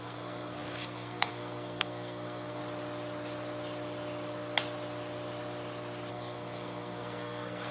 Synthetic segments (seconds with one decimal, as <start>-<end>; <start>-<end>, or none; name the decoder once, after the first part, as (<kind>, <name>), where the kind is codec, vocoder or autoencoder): 0.0-2.6 (codec, SNAC); 6.1-7.7